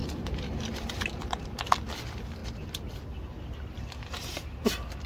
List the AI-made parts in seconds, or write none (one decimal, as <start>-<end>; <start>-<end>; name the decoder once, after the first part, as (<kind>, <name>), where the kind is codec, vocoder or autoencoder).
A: 0.0-1.6 (vocoder, BigVGAN v2); 2.4-2.9